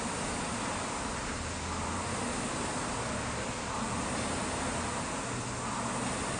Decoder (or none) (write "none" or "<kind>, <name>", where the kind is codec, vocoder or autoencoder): none